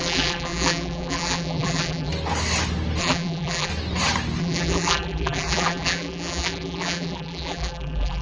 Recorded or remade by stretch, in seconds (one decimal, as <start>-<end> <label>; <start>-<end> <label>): 0.0-2.1 remade; 2.1-3.0 recorded; 3.0-3.7 remade; 3.7-4.4 recorded; 4.4-8.2 remade